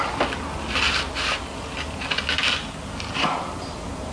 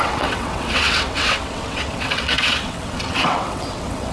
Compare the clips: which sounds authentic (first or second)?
first